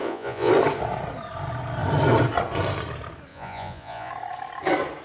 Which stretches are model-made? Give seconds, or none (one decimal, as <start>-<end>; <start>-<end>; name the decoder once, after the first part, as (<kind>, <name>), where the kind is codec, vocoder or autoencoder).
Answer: 0.0-0.5 (vocoder, Vocos); 3.3-4.1